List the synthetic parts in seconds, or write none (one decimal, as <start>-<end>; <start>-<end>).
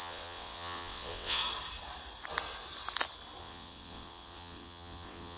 0.0-1.4; 3.4-5.4